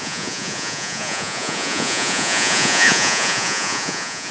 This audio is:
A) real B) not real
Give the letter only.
B